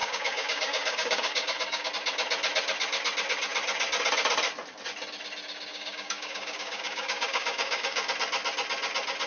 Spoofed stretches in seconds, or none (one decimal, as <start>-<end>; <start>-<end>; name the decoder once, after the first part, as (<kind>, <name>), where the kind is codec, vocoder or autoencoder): 0.0-1.9 (codec, DAC); 5.7-8.1